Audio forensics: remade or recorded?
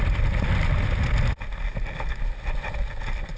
recorded